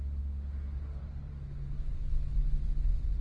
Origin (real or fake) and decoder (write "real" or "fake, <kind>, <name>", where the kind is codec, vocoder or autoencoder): real